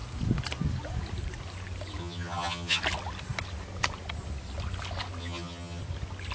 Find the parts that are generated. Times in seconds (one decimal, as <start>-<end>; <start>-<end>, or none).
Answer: 2.0-2.8; 5.2-5.8